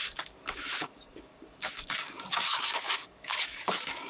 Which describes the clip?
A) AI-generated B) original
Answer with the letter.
A